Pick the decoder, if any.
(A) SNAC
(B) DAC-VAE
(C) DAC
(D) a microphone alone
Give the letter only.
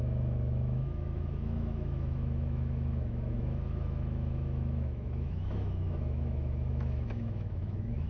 B